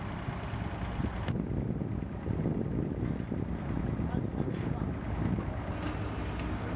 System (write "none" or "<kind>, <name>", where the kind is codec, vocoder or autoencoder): none